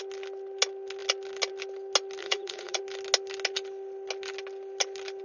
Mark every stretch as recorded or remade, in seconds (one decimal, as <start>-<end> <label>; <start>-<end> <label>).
0.0-2.2 recorded; 2.2-2.8 remade; 2.8-5.2 recorded